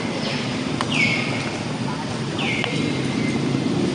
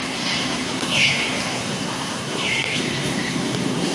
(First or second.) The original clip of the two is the first